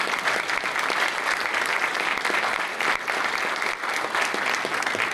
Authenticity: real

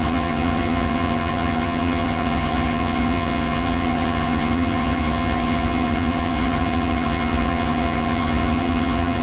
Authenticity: fake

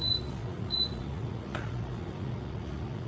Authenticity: fake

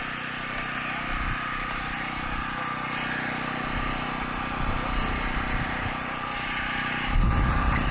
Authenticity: real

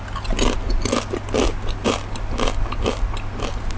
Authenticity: real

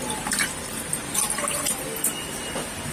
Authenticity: fake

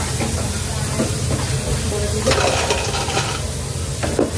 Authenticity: real